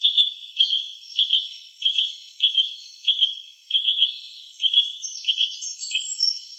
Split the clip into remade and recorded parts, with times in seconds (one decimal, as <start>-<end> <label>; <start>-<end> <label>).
0.0-6.6 remade